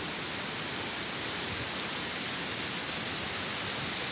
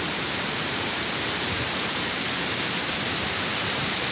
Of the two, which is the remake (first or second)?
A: second